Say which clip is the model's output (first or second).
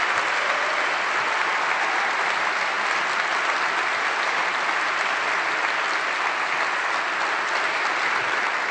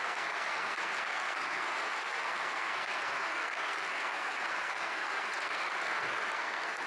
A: second